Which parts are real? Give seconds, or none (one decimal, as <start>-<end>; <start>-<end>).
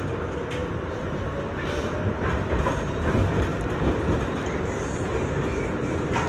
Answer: 0.0-3.5; 5.2-6.3